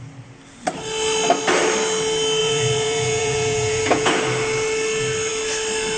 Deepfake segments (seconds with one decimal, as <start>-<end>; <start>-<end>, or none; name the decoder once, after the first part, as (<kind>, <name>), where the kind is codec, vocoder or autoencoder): 2.4-4.1 (vocoder, Vocos)